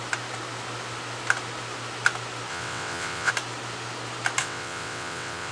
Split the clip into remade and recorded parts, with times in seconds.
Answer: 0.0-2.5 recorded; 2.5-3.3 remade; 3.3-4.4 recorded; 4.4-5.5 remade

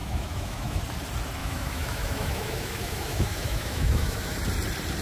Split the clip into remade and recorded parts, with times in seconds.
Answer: 0.0-0.8 remade; 0.8-1.4 recorded; 1.4-4.4 remade; 4.4-5.0 recorded